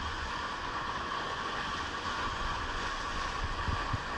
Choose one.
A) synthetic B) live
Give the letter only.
A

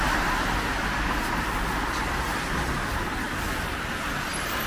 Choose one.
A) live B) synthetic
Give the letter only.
A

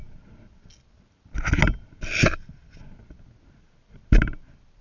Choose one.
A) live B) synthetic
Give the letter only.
A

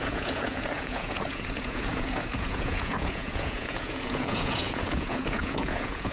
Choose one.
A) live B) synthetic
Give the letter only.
B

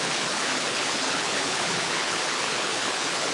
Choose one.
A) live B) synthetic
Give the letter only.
B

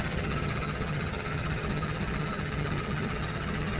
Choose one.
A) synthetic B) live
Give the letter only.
A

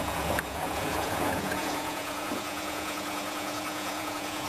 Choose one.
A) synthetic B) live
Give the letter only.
A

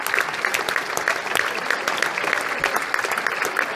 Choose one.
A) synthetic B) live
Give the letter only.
B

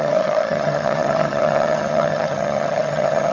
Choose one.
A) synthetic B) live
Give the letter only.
A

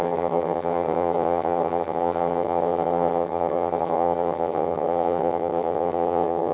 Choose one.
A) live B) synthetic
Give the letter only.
B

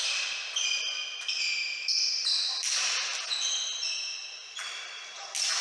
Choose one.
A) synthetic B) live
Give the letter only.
B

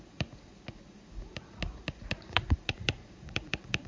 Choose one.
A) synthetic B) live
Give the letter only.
A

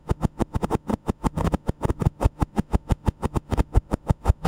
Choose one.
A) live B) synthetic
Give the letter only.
B